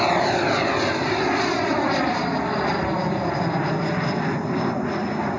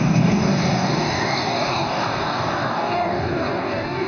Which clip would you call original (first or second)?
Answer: first